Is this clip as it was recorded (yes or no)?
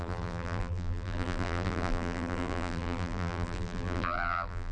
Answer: no